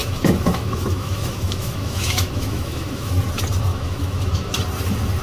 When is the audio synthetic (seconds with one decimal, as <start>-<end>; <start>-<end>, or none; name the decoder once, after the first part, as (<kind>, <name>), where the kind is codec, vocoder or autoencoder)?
0.0-3.1 (autoencoder, DAC-VAE); 3.7-4.5